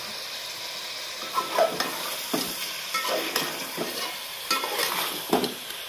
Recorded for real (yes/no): no